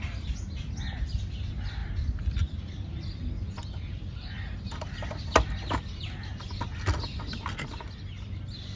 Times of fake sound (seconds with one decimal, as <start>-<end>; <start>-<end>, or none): none